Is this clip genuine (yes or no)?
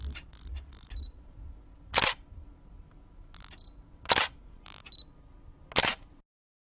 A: yes